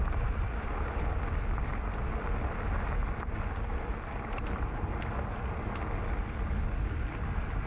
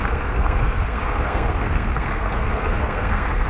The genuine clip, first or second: first